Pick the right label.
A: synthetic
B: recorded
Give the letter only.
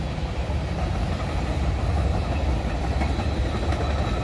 B